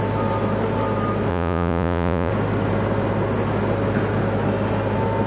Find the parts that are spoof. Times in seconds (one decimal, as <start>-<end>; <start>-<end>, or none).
1.3-2.3